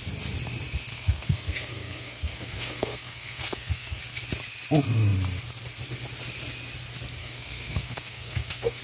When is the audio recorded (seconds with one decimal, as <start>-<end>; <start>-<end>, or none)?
0.0-0.9; 4.0-7.2